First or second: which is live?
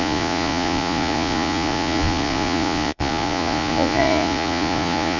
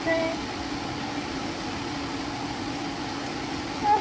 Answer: second